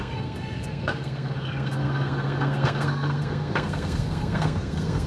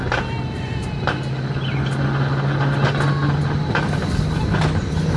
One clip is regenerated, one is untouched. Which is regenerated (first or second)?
first